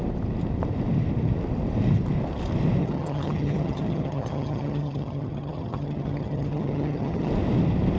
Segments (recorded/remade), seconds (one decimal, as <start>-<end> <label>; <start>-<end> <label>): 0.0-2.8 recorded; 2.8-7.3 remade; 7.3-8.0 recorded